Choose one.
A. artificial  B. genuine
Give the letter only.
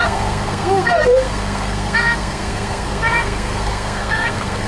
A